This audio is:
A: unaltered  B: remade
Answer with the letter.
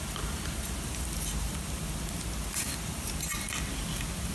A